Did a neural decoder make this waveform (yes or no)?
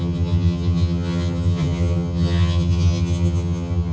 yes